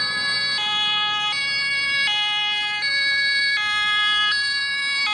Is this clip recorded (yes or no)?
yes